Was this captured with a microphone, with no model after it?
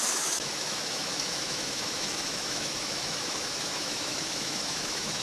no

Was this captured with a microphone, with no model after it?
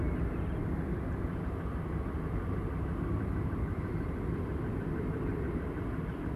yes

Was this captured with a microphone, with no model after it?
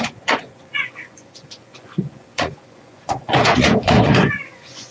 no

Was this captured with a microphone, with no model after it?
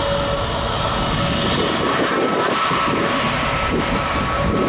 yes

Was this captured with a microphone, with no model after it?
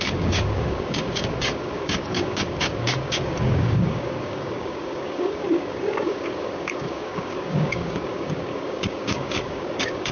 no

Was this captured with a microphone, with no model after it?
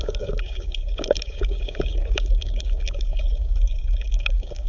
no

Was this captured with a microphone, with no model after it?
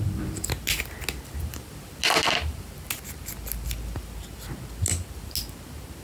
yes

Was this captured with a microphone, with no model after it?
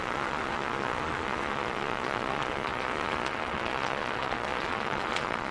no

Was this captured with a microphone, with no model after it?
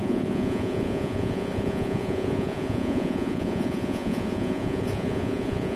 no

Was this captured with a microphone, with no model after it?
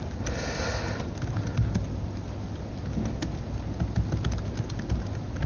yes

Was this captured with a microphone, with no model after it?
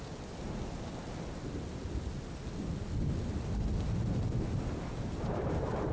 yes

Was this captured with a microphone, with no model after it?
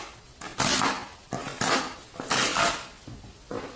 yes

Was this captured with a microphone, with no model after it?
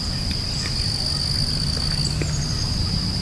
yes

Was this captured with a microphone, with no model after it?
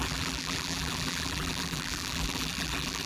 no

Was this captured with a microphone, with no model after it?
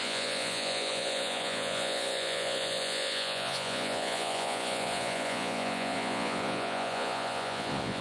no